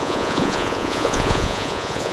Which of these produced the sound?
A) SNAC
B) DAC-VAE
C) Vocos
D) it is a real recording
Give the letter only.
C